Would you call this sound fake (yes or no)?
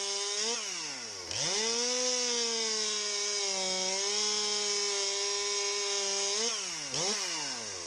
no